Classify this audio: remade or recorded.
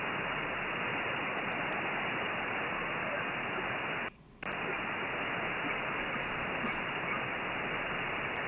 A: recorded